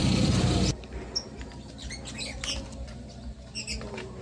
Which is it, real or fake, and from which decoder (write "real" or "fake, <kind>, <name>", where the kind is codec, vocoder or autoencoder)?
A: real